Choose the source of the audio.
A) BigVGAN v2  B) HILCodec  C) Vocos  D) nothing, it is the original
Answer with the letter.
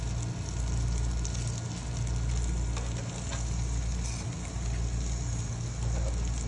D